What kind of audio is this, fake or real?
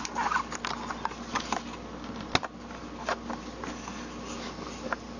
real